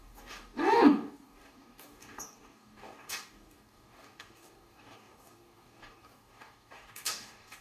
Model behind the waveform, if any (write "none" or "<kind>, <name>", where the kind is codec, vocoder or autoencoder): codec, DAC